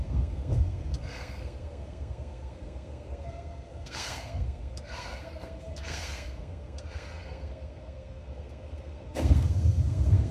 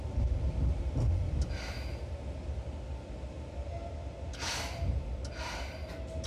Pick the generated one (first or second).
first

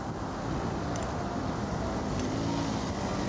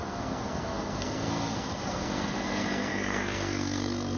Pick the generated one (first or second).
second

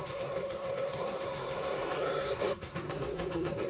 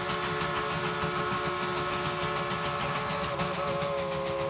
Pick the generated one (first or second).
first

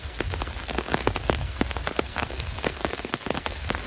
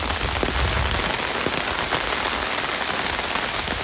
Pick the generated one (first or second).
first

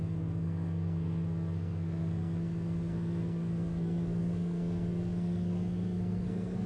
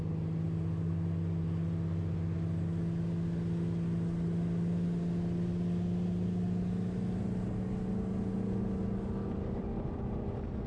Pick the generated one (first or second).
first